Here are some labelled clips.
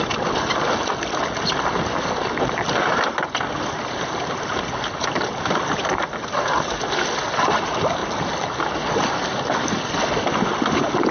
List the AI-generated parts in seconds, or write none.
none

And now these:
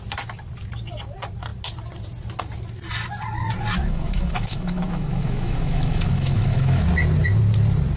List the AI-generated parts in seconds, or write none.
3.8-6.8 (autoencoder, DAC-VAE)

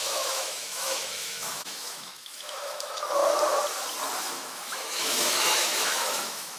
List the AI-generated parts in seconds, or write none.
0.0-3.2 (autoencoder, DAC-VAE); 4.2-6.6

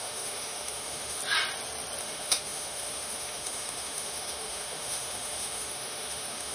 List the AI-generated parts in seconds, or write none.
0.0-1.2 (autoencoder, DAC-VAE); 2.0-6.5

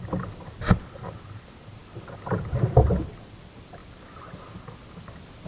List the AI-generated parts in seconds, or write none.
none